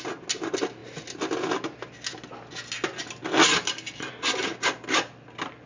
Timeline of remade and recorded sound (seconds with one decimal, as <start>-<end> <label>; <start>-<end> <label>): 0.0-5.7 recorded